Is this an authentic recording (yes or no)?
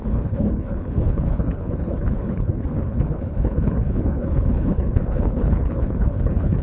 no